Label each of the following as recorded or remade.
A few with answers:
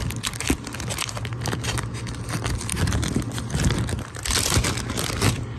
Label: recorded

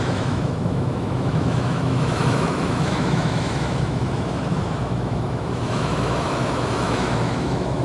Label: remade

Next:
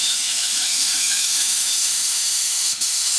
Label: remade